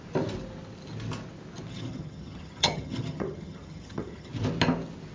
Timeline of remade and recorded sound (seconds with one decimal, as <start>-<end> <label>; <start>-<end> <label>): 0.0-1.7 recorded; 1.7-4.3 remade; 4.3-5.1 recorded